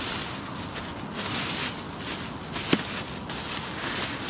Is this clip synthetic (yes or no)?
no